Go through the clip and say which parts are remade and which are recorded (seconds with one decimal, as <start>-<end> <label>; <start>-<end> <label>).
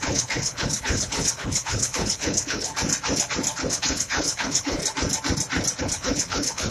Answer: 0.0-2.7 remade; 2.7-3.7 recorded; 3.7-4.8 remade; 4.8-5.8 recorded; 5.8-6.7 remade